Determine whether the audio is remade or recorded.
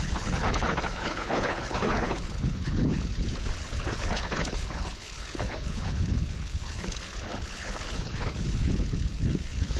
remade